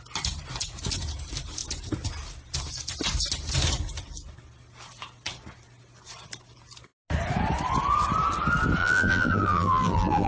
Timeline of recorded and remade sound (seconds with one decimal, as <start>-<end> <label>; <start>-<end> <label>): 0.0-8.8 recorded; 8.8-10.3 remade

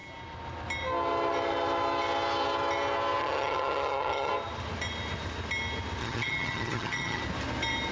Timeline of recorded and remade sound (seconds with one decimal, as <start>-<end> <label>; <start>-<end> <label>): 0.0-3.2 recorded; 3.2-4.3 remade; 4.3-6.0 recorded; 6.0-7.2 remade; 7.2-7.9 recorded

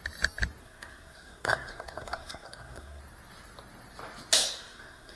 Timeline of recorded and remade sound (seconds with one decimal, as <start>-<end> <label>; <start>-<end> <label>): 0.0-0.6 recorded; 0.6-3.0 remade; 3.0-4.4 recorded; 4.4-5.2 remade

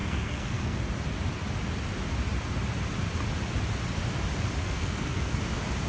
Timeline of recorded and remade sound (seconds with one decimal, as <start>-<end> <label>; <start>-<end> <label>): 0.0-0.8 remade; 0.8-4.6 recorded; 4.6-5.4 remade; 5.4-5.9 recorded

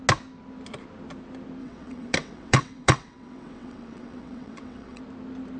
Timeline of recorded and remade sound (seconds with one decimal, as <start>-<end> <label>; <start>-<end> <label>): 0.0-1.6 recorded; 1.6-5.0 remade; 5.0-5.6 recorded

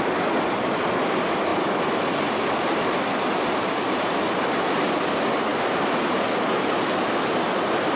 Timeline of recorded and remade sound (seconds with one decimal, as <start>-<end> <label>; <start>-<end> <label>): 0.0-8.0 remade